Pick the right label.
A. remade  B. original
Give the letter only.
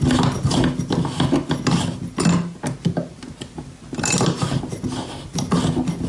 B